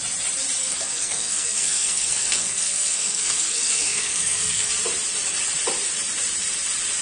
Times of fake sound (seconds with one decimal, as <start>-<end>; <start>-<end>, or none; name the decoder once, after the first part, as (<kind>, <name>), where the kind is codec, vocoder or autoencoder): 0.6-4.7 (codec, SNAC)